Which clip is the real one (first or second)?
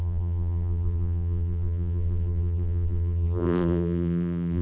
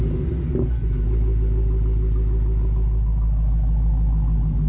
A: second